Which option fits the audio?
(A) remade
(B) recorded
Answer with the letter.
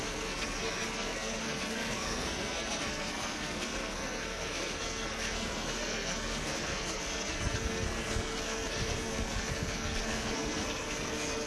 A